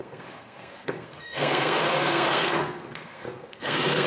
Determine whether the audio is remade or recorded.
remade